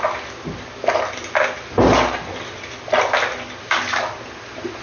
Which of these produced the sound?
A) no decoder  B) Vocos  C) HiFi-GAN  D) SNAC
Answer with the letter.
A